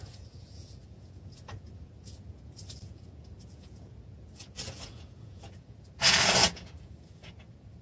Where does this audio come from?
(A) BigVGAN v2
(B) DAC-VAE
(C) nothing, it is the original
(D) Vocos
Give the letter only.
D